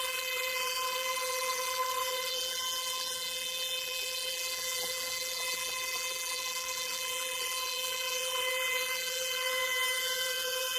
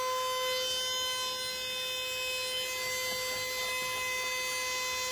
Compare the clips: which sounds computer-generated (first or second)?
first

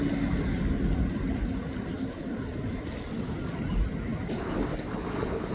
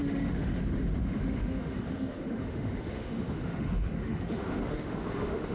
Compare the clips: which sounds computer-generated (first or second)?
second